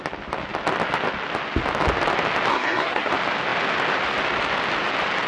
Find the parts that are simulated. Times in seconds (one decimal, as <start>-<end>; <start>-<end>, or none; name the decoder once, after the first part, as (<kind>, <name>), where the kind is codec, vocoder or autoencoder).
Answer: 2.5-3.1 (codec, SNAC)